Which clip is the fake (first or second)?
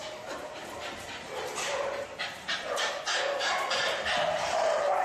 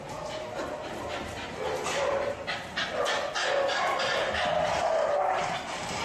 first